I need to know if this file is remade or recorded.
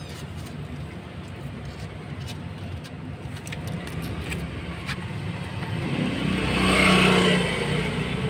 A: recorded